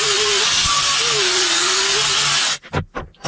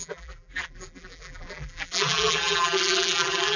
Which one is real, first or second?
first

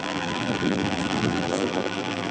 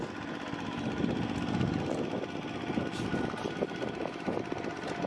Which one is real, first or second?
second